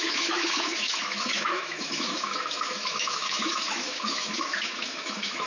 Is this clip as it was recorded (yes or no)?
no